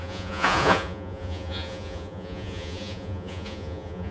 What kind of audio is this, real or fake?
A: fake